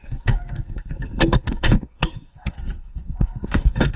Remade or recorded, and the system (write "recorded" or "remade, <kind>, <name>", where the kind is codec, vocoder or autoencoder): remade, codec, SNAC